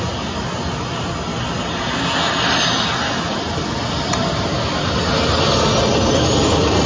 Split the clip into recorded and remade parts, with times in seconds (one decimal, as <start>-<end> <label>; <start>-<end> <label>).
0.0-6.9 recorded